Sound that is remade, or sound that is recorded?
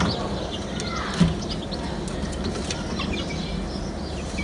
recorded